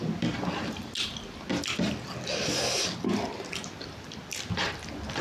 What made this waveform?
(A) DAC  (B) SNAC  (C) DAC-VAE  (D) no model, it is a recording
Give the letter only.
D